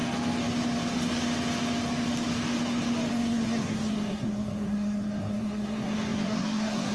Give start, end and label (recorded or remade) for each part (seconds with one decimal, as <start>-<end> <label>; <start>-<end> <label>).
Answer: 0.0-3.1 recorded; 3.1-6.9 remade